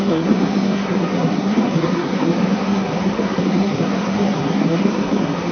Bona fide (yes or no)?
no